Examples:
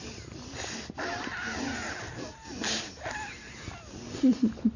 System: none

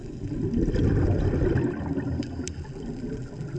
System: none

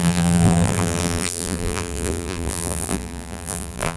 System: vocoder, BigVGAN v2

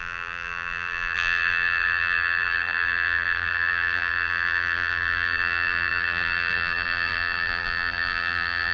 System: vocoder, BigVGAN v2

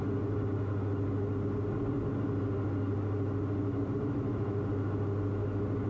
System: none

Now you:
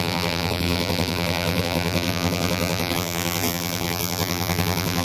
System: vocoder, BigVGAN v2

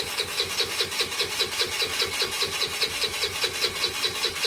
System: none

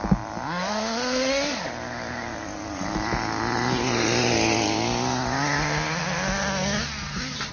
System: none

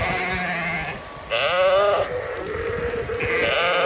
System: none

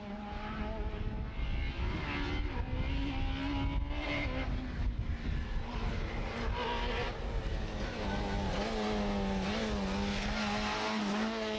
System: none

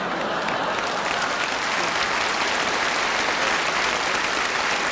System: none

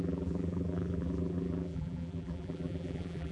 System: vocoder, BigVGAN v2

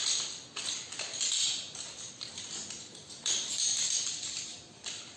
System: vocoder, BigVGAN v2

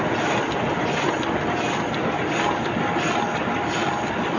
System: none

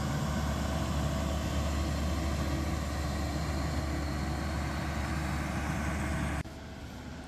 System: none